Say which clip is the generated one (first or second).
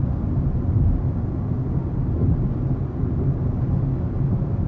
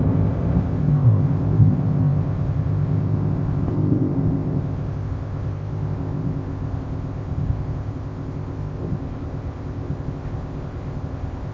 second